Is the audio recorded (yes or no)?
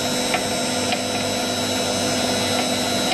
yes